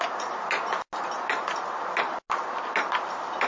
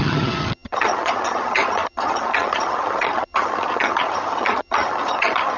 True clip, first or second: first